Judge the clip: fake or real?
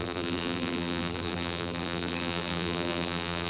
fake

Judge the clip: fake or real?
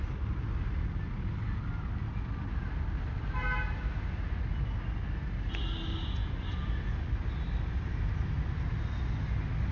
real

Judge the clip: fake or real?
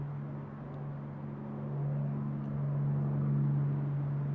real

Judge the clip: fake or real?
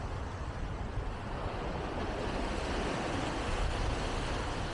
real